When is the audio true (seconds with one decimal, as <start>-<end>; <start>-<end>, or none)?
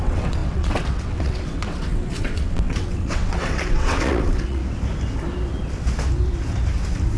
4.6-7.2